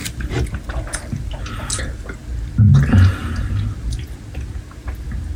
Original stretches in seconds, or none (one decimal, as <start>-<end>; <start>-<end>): 0.0-5.4